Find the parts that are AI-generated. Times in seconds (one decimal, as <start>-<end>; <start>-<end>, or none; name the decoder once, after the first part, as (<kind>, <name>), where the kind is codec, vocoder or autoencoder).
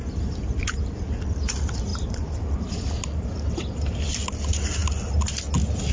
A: none